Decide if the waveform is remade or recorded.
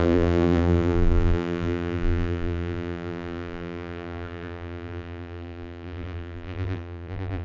remade